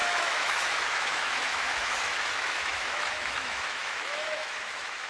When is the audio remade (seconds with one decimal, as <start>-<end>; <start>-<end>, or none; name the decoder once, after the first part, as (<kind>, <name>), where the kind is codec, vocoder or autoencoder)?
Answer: 0.0-5.1 (autoencoder, DAC-VAE)